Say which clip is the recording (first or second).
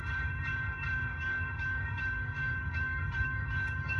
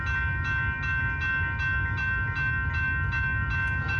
second